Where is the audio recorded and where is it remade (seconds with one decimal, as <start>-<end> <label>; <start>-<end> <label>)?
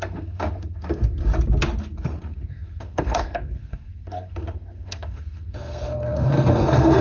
0.0-1.3 remade; 1.3-1.8 recorded; 1.8-7.0 remade